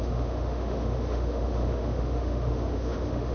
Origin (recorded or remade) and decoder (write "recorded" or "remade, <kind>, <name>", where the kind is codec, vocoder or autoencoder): remade, autoencoder, DAC-VAE